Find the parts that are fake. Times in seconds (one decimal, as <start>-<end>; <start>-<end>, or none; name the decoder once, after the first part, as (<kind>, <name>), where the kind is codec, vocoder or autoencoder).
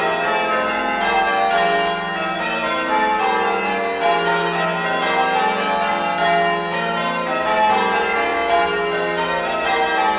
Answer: none